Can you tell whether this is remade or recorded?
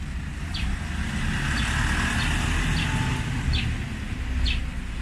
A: recorded